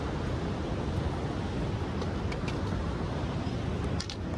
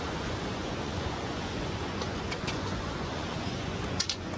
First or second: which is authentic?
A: first